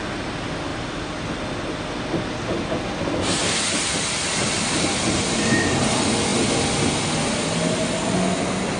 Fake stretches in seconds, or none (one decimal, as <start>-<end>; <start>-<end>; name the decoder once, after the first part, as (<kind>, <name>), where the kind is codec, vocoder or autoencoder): none

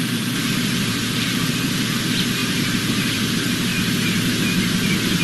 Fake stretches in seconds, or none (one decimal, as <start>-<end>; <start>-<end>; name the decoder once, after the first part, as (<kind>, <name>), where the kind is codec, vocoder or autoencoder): 0.0-3.7 (vocoder, BigVGAN v2)